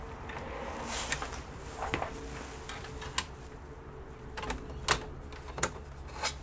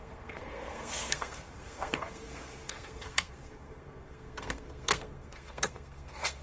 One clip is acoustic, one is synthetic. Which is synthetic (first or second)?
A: second